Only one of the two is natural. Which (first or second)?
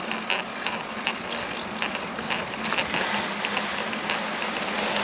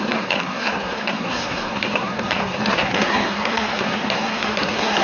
first